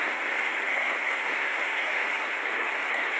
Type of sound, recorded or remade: remade